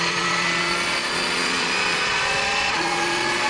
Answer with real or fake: fake